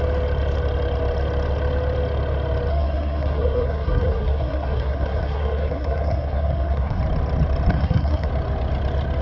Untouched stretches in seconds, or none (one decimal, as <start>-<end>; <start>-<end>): 0.0-2.7; 7.0-7.7; 8.3-9.2

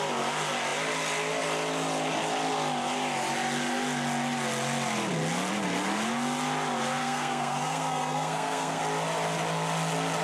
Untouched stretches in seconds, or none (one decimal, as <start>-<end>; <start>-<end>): 0.0-7.0; 8.8-10.2

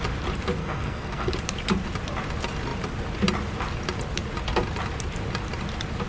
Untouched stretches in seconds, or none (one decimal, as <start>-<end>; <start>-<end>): 0.0-0.6; 1.3-6.1

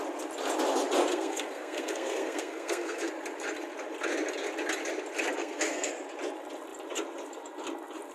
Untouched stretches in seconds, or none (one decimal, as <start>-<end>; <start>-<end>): 0.0-1.1; 3.1-5.4; 5.9-8.1

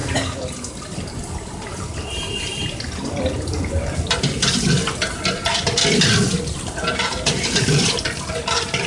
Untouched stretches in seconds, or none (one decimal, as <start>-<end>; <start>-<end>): 0.0-8.9

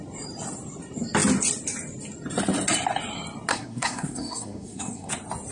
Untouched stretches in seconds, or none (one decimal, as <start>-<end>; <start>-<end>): 0.0-3.5; 5.1-5.5

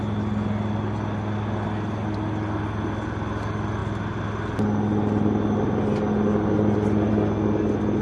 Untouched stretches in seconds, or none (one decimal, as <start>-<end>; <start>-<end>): 0.0-8.0